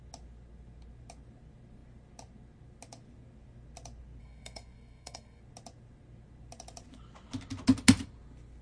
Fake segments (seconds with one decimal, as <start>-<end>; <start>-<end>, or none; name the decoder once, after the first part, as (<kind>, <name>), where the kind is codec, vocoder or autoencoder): 4.2-5.4 (codec, SNAC)